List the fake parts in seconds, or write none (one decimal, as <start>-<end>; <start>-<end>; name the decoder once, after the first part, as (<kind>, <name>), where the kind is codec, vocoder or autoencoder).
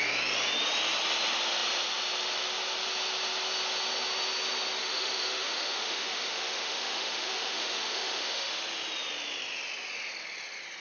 4.8-8.6 (autoencoder, DAC-VAE)